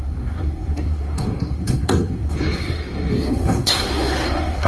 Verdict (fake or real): fake